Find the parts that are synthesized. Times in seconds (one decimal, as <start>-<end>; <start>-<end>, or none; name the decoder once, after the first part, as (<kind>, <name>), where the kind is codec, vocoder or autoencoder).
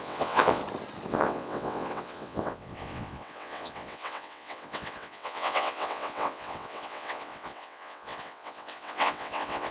0.0-0.6 (vocoder, WaveNeXt); 1.1-9.7